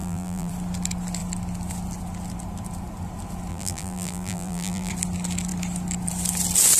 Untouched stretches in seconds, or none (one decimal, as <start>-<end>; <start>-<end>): 0.5-3.5; 4.9-6.8